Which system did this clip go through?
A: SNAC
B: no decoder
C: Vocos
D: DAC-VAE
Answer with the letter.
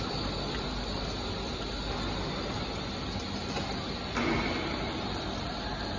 B